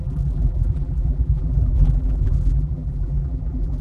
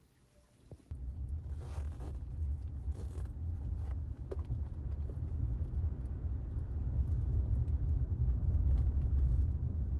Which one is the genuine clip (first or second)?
second